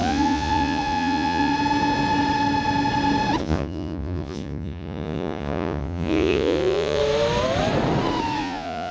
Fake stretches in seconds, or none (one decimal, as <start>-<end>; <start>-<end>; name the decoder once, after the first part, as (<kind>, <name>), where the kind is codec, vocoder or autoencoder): 0.0-1.5 (vocoder, Vocos); 3.4-7.0; 8.4-8.9